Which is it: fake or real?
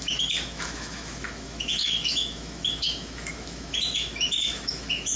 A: fake